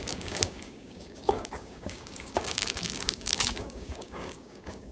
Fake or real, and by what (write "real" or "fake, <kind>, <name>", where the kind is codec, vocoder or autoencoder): fake, codec, DAC